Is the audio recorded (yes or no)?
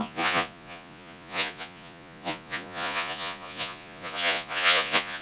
no